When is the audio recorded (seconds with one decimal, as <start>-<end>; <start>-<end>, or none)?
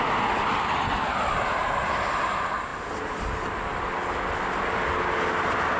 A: 0.0-5.8